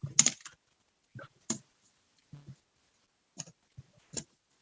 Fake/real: real